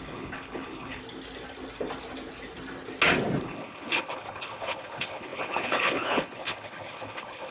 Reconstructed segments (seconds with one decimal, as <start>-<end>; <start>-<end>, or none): 0.0-1.0; 3.4-7.5